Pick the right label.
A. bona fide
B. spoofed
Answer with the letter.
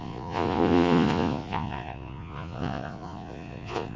B